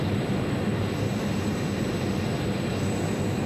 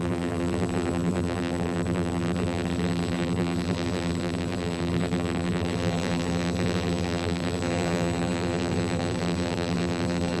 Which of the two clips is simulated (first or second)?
second